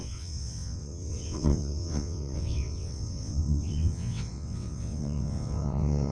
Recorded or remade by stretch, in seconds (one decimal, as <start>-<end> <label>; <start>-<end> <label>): 0.0-6.1 remade